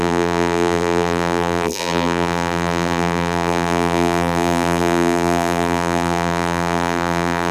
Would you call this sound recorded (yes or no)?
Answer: no